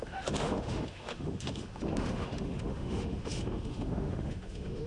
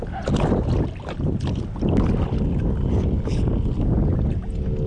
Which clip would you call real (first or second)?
second